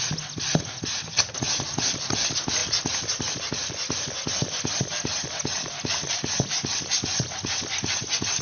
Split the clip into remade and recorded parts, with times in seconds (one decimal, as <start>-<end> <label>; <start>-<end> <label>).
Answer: 0.0-8.4 recorded